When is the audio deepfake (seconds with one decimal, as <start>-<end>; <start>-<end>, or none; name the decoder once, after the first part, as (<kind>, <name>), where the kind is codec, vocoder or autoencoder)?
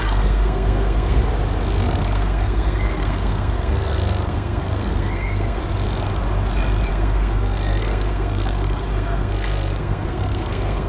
0.0-1.2 (codec, SNAC); 1.8-5.6; 6.9-10.9